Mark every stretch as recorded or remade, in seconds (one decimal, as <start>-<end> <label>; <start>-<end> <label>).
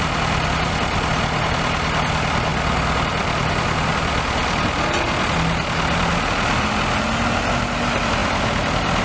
0.0-9.0 recorded